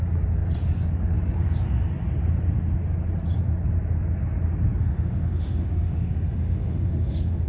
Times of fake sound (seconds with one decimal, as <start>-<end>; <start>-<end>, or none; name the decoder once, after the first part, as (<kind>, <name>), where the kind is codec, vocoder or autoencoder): 4.8-7.5 (autoencoder, DAC-VAE)